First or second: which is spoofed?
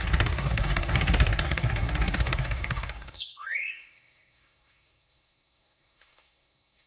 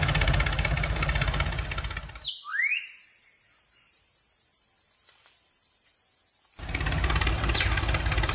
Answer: first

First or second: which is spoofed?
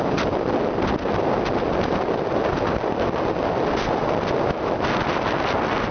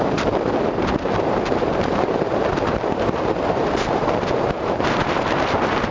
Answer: second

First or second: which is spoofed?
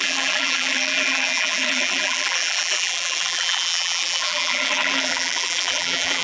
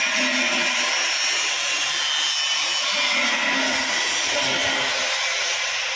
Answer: first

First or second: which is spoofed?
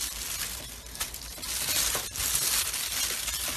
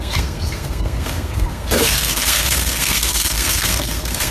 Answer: second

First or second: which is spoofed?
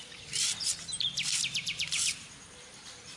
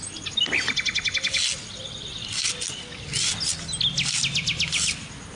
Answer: first